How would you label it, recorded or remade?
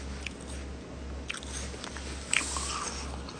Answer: recorded